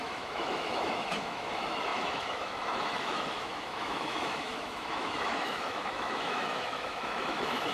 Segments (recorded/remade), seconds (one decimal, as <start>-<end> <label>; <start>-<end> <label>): 0.0-7.7 remade